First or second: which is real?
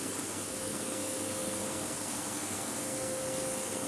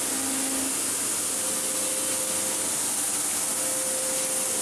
second